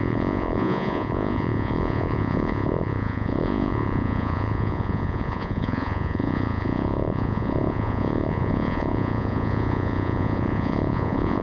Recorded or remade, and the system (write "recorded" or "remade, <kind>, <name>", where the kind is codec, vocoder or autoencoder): remade, vocoder, Vocos